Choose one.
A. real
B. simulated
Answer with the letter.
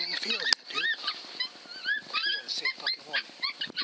A